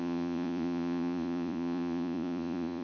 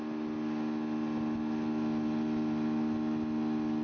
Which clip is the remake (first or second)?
first